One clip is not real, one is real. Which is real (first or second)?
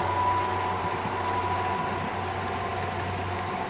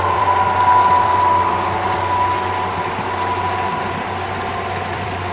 first